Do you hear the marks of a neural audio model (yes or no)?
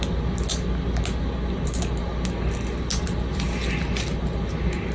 no